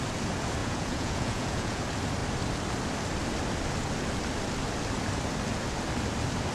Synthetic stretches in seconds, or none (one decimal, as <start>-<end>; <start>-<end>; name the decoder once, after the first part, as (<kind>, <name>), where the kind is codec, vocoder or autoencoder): 0.6-1.8 (vocoder, Vocos)